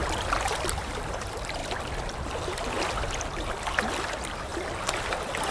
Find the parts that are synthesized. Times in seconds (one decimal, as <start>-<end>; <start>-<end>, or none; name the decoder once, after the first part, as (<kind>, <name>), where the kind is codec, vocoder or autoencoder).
0.0-1.6 (vocoder, BigVGAN v2); 4.1-4.5; 5.0-5.5